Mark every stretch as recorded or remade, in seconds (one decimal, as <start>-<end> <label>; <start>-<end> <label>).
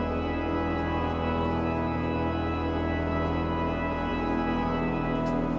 0.0-5.6 recorded